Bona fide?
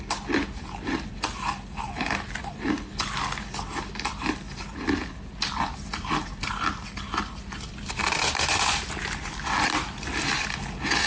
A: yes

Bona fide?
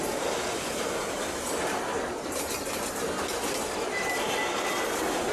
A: yes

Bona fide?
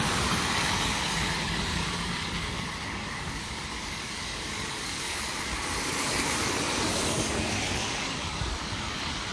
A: no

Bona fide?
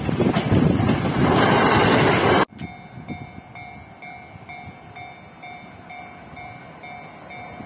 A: yes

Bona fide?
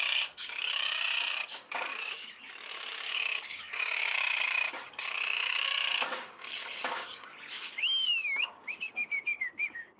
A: no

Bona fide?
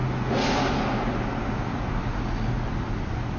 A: yes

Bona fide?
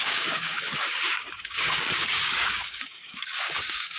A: no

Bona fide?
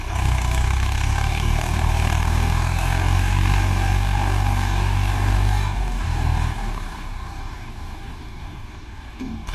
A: no